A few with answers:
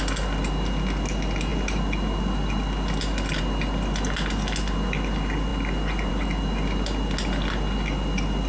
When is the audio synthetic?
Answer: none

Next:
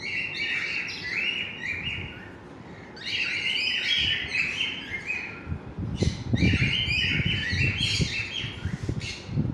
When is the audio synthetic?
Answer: 4.3-5.0 (vocoder, BigVGAN v2)

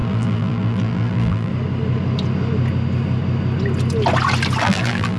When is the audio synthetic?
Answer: 0.0-1.5 (vocoder, BigVGAN v2); 4.6-5.2